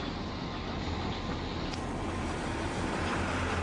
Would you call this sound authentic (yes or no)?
yes